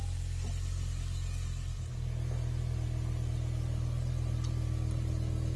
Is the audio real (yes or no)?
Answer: yes